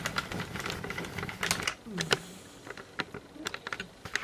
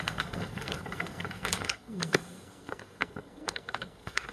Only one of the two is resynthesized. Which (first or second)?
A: second